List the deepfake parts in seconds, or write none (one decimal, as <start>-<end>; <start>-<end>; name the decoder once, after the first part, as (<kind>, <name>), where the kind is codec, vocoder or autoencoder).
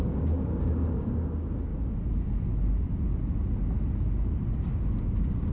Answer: 0.0-1.7 (codec, DAC); 5.0-5.5